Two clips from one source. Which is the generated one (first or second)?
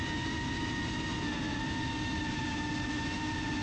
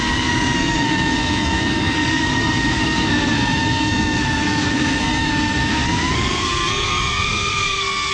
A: second